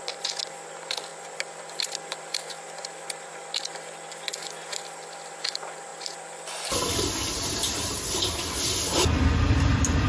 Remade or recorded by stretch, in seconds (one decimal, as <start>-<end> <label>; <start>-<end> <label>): 0.0-10.1 recorded